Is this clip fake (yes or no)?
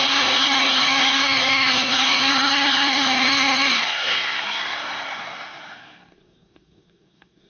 yes